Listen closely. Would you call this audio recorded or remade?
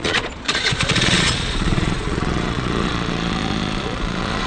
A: remade